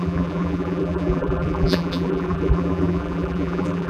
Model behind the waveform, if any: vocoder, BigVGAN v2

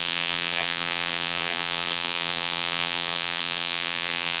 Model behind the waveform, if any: vocoder, BigVGAN v2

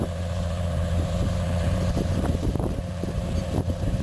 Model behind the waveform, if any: vocoder, BigVGAN v2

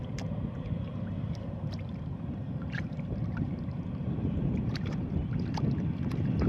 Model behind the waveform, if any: vocoder, BigVGAN v2